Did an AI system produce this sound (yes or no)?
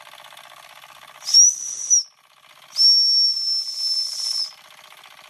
no